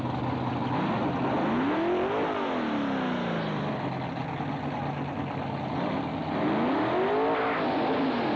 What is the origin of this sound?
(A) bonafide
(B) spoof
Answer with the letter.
A